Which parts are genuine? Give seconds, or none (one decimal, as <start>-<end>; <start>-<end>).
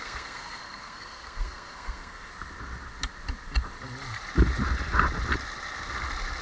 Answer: 2.3-6.4